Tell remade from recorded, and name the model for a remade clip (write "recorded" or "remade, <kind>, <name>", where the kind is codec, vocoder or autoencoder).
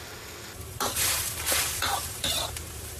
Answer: recorded